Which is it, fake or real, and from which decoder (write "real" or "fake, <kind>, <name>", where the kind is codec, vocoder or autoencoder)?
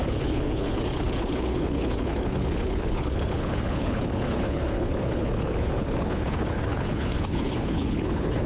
fake, codec, HILCodec